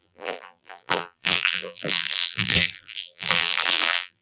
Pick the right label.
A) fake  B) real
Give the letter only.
A